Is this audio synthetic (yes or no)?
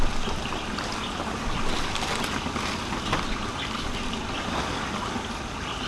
no